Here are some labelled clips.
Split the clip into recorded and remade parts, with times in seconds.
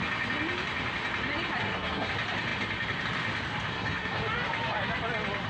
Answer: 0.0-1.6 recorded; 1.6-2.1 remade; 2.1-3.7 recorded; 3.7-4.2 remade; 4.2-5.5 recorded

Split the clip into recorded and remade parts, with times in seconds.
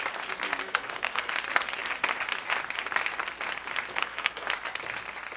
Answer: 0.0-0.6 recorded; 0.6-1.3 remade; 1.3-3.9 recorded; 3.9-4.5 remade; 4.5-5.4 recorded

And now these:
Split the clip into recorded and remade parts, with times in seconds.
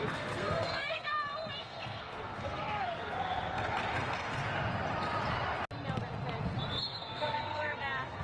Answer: 0.0-1.1 remade; 1.1-1.6 recorded; 1.6-4.4 remade; 4.4-6.8 recorded; 6.8-8.2 remade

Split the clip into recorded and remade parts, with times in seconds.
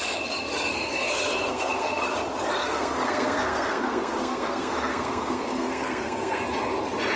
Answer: 0.0-0.7 recorded; 0.7-2.0 remade; 2.0-2.6 recorded; 2.6-6.4 remade; 6.4-7.2 recorded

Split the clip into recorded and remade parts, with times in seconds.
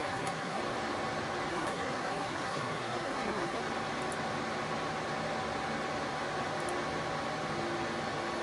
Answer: 0.0-0.6 remade; 0.6-1.5 recorded; 1.5-3.6 remade; 3.6-8.4 recorded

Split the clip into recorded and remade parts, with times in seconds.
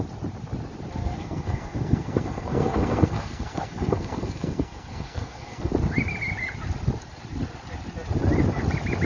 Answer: 0.0-1.0 recorded; 1.0-5.7 remade; 5.7-9.0 recorded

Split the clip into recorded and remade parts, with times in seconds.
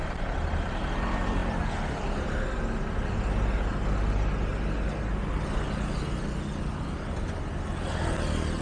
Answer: 0.0-8.6 recorded